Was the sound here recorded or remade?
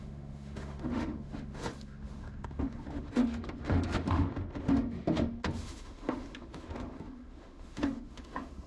remade